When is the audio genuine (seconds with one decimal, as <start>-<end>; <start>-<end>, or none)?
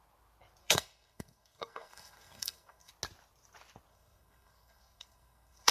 0.0-0.6; 2.9-3.9